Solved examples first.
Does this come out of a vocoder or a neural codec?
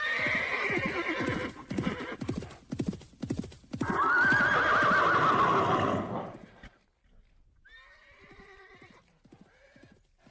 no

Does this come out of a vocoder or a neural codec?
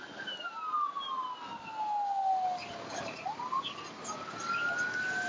no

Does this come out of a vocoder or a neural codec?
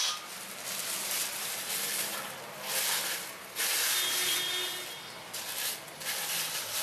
no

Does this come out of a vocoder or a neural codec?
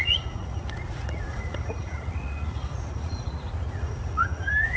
yes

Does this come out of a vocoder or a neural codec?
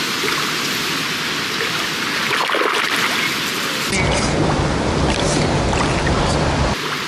no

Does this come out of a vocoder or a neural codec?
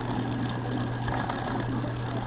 no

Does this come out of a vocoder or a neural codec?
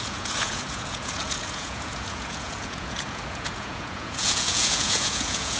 yes